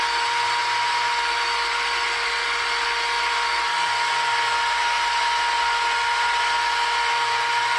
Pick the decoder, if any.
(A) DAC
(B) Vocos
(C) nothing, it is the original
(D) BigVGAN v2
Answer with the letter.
C